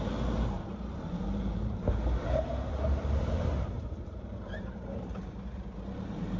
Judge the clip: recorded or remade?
remade